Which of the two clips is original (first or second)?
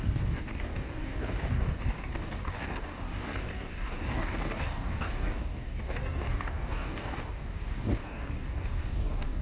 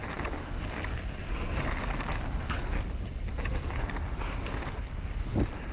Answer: second